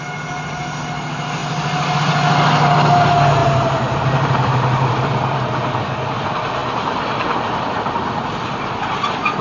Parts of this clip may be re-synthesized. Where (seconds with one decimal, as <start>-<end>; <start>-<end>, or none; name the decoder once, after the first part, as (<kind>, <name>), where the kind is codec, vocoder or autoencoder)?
1.4-2.0 (vocoder, BigVGAN v2); 3.4-5.8